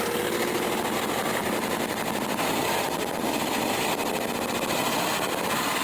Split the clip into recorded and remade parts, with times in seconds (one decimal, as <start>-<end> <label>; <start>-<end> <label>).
0.0-5.8 recorded